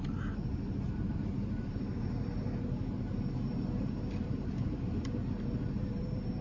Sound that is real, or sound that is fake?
fake